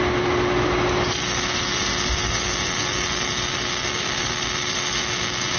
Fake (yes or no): no